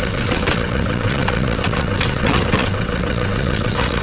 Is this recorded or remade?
remade